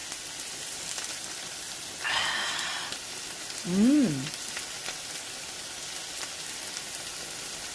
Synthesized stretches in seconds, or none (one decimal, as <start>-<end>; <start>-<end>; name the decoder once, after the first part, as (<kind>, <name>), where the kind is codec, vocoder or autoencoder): none